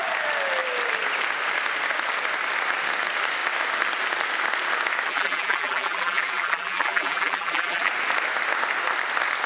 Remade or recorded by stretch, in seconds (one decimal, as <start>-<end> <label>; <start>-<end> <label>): 0.0-5.1 recorded; 5.1-7.9 remade; 7.9-9.5 recorded